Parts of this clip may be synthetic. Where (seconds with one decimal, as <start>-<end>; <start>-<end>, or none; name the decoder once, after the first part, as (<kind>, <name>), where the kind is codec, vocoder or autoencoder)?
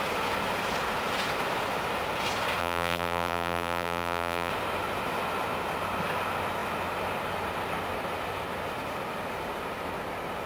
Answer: 2.6-4.5 (vocoder, BigVGAN v2)